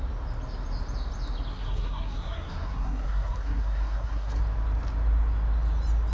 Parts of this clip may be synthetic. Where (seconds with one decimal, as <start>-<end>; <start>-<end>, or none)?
1.5-4.4